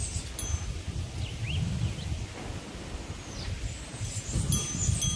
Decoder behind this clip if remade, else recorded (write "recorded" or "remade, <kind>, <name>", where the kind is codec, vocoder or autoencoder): recorded